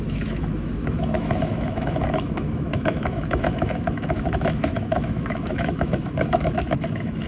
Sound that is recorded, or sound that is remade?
remade